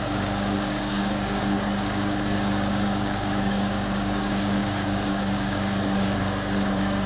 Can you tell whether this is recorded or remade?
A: remade